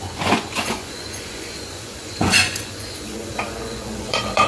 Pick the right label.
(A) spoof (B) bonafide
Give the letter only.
A